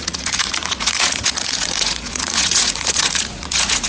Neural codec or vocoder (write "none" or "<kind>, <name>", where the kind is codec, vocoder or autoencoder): vocoder, Vocos